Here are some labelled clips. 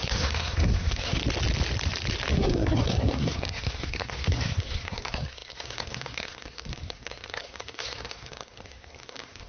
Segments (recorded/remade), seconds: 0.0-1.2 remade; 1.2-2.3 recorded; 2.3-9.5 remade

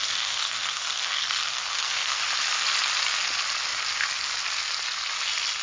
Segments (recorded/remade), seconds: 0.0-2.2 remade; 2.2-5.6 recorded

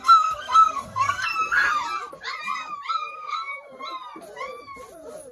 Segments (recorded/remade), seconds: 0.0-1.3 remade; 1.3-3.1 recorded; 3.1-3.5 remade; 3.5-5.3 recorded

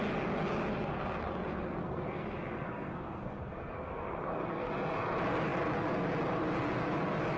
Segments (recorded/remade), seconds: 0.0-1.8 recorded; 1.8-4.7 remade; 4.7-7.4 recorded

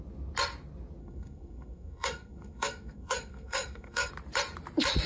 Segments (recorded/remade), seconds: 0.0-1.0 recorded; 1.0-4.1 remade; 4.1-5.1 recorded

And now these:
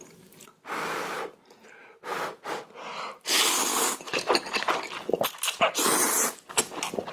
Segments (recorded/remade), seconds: 0.0-7.1 recorded

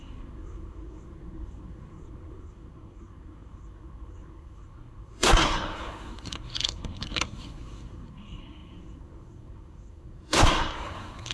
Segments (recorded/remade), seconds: 0.0-11.3 remade

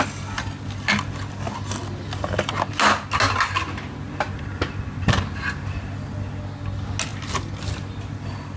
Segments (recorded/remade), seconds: 0.0-8.6 recorded